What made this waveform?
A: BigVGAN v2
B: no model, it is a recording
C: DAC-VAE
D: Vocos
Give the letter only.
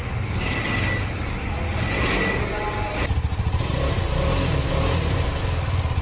B